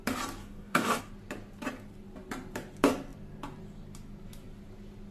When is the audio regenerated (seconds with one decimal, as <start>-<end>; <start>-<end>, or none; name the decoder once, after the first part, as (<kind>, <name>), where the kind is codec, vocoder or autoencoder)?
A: 0.4-1.0 (codec, DAC)

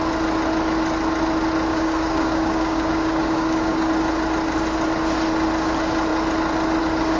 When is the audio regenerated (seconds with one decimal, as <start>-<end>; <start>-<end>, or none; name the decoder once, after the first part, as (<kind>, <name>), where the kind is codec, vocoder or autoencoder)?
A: 1.7-3.9 (codec, DAC)

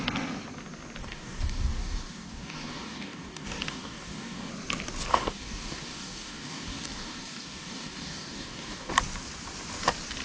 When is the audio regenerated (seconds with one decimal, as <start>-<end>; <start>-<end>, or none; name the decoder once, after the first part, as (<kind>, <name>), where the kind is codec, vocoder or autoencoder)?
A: 1.0-4.5 (codec, DAC); 5.1-8.9

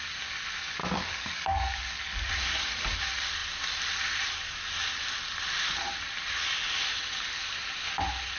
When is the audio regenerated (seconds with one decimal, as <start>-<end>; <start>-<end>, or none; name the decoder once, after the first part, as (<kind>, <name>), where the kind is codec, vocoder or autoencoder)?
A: 0.8-2.3 (codec, DAC)

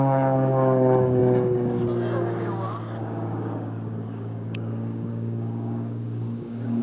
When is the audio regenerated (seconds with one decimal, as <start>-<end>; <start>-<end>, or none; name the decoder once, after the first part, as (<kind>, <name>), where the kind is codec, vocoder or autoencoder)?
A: 0.0-6.8 (codec, DAC)

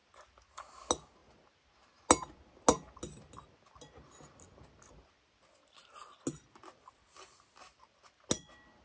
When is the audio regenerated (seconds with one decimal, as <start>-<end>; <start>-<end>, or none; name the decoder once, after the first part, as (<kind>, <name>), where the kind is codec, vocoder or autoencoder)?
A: none